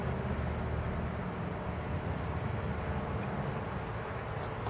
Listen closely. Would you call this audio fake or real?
real